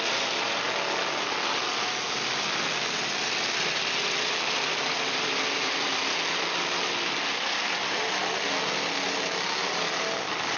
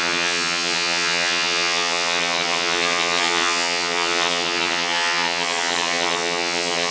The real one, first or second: first